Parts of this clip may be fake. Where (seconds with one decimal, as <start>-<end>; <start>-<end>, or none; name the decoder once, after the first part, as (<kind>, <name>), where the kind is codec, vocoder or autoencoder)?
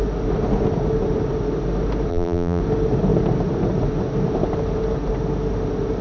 2.1-2.6 (vocoder, BigVGAN v2)